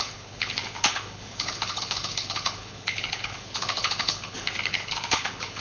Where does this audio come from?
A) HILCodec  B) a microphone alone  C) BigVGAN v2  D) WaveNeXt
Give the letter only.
A